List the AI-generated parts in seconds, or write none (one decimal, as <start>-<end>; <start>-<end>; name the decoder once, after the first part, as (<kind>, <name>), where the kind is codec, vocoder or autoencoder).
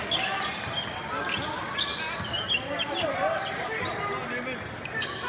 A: none